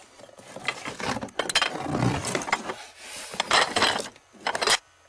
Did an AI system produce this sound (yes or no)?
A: no